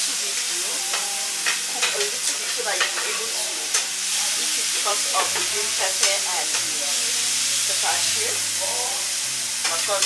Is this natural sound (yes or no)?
no